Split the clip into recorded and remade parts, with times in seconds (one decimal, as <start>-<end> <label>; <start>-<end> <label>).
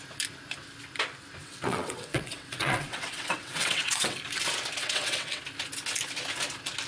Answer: 0.0-1.4 recorded; 1.4-4.2 remade; 4.2-4.8 recorded; 4.8-5.4 remade; 5.4-6.9 recorded